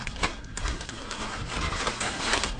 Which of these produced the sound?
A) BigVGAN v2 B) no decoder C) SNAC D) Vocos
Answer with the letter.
C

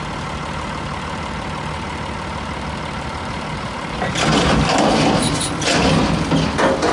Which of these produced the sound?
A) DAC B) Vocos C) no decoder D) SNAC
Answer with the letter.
C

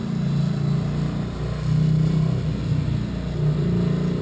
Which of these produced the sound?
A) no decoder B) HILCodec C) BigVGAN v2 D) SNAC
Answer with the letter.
A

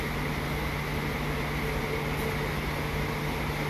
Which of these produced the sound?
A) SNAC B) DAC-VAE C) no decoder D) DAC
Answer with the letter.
C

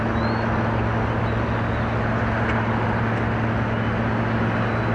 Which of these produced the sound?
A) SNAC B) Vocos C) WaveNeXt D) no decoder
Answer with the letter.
D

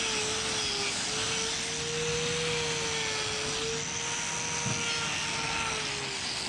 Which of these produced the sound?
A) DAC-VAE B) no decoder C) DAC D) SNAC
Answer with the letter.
B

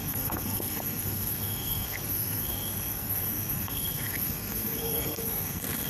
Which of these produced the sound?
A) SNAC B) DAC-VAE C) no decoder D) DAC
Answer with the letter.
A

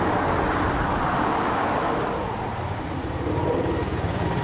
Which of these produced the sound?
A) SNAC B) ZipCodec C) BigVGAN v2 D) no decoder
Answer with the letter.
D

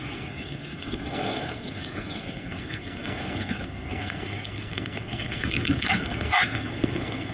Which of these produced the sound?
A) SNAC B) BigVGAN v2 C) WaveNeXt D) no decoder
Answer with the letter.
A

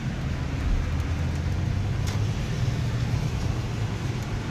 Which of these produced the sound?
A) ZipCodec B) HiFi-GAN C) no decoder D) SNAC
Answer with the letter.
C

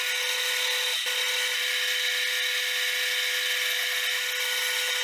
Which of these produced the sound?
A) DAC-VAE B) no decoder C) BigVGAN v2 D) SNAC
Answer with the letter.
B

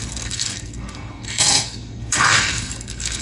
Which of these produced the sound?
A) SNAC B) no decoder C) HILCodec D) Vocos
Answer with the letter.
A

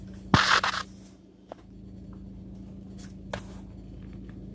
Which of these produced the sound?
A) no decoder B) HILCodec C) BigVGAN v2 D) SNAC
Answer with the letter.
A